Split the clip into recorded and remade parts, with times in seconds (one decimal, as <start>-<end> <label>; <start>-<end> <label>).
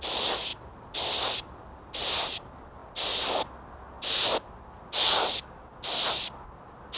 0.0-7.0 recorded